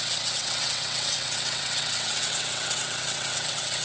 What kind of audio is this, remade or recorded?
remade